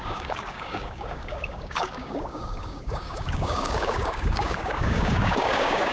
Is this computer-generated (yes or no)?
yes